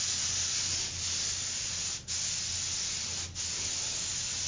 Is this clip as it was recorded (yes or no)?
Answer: yes